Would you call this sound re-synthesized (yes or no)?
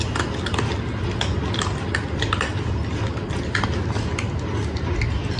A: no